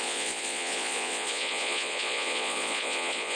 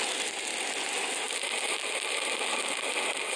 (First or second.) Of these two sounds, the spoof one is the first